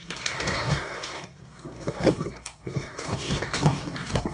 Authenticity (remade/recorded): remade